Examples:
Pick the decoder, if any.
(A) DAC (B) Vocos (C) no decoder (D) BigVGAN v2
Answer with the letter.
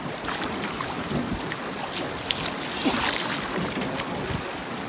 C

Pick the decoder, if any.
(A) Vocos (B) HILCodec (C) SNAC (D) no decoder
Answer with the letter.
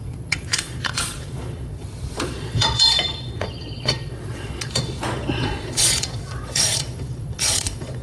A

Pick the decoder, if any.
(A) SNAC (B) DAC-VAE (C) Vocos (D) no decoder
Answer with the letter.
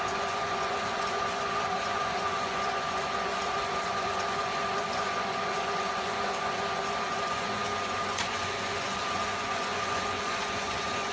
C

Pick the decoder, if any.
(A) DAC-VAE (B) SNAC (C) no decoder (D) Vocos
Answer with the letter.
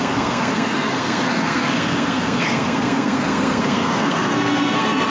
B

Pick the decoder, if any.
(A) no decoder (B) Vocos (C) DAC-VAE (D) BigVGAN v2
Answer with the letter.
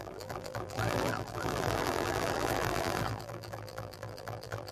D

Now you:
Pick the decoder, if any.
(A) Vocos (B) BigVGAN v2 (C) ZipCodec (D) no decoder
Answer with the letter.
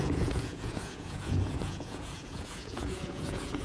A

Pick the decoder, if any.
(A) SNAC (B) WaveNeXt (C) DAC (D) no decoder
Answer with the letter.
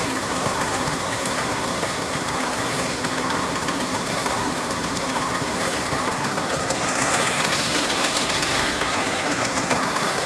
A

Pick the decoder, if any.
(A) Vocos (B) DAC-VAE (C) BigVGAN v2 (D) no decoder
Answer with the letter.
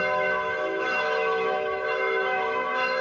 B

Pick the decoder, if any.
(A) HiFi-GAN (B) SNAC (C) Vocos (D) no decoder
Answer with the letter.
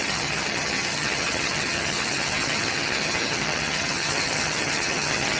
A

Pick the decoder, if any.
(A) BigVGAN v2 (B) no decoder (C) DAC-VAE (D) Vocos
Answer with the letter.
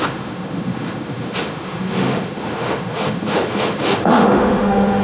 C